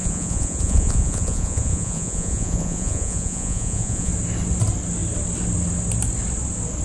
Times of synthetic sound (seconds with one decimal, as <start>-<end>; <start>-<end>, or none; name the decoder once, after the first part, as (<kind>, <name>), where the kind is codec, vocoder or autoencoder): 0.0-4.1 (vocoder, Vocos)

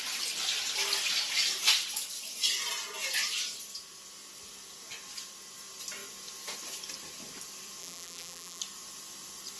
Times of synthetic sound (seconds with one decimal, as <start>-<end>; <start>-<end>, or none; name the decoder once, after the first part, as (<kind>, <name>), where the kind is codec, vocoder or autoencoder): 7.8-8.6 (vocoder, BigVGAN v2)

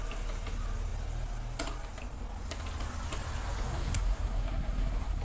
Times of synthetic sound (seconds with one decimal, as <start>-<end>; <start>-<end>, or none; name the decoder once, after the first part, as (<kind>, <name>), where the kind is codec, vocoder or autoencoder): 3.7-5.2 (codec, SNAC)